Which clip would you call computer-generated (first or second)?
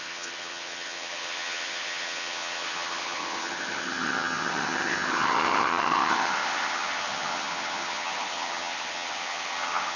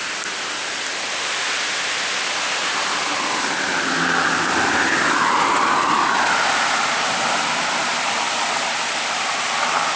first